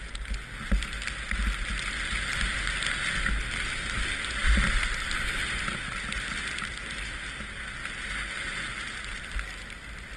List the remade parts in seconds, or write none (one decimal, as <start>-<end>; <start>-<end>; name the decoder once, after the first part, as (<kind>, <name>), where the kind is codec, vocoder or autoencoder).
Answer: none

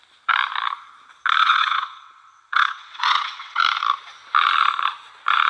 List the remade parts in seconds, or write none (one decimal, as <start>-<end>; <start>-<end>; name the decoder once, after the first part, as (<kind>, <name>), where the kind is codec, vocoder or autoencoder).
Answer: 1.4-3.6 (vocoder, WaveNeXt)

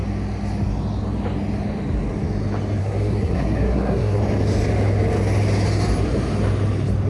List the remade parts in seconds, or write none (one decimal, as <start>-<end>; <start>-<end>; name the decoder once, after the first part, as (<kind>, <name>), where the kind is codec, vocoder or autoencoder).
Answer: 2.8-4.2 (codec, SNAC)

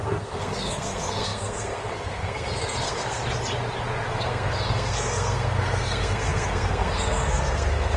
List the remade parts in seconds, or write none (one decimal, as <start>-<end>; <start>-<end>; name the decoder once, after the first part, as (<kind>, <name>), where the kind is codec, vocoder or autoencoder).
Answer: 0.0-3.2 (codec, SNAC); 4.1-8.0

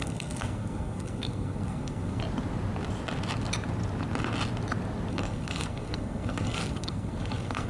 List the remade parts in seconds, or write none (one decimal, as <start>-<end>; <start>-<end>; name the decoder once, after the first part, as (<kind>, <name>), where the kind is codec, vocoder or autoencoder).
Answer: 0.0-2.2 (codec, SNAC); 5.1-7.7

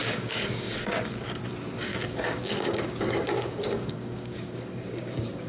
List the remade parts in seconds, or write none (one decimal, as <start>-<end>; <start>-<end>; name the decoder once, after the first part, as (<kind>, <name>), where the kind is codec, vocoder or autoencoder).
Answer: 0.0-1.4 (codec, DAC); 1.9-5.5